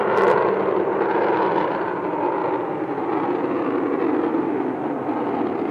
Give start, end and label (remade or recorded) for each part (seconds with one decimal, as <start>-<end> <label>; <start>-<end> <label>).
0.0-2.4 remade; 2.4-4.9 recorded; 4.9-5.7 remade